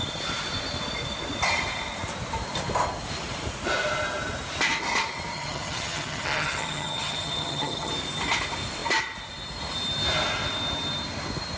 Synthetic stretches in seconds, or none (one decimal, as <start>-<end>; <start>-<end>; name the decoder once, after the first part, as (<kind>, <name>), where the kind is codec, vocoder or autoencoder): 5.3-7.9 (vocoder, HiFi-GAN)